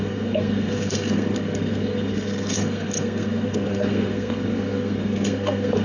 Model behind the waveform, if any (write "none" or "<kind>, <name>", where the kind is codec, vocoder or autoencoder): codec, SNAC